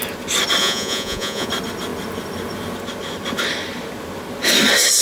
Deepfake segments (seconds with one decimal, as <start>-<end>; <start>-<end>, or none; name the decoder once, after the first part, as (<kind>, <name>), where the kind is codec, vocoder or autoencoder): 0.6-1.5 (vocoder, Vocos)